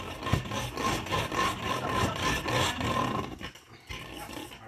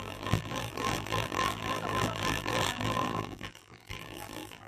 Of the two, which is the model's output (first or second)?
second